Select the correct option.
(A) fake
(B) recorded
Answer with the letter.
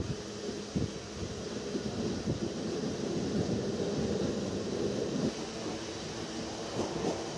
B